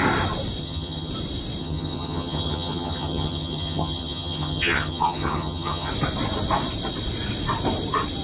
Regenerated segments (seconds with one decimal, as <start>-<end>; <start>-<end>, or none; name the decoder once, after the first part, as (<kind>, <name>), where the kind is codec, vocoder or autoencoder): 0.6-1.1 (vocoder, HiFi-GAN); 1.6-5.9